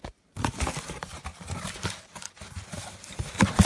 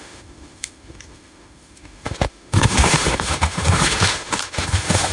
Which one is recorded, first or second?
first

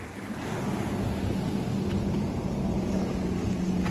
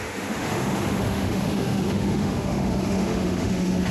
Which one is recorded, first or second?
first